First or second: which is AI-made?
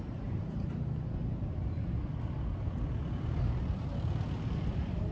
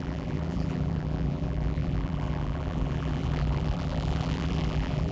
second